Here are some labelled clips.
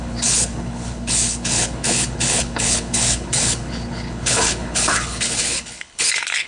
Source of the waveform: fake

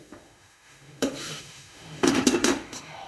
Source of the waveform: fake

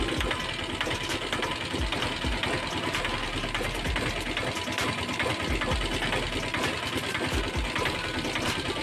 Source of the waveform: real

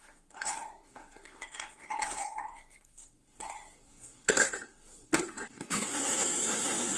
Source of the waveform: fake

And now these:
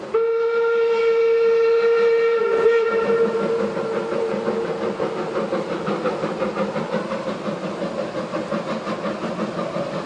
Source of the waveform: real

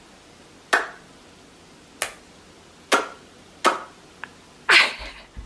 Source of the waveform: real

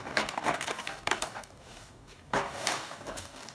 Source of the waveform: fake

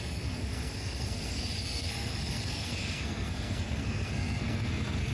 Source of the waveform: fake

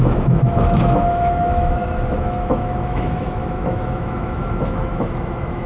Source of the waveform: fake